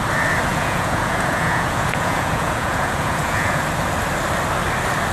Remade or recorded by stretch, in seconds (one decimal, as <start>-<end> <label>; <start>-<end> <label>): 0.0-0.5 recorded; 0.5-3.6 remade; 3.6-5.1 recorded